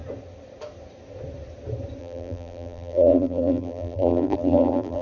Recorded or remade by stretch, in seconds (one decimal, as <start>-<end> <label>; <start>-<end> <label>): 0.0-2.0 recorded; 2.0-5.0 remade